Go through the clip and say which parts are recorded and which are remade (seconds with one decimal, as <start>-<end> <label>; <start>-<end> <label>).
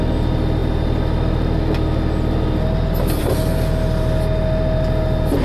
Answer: 0.0-5.4 recorded